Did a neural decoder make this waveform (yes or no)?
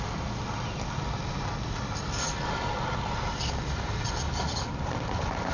no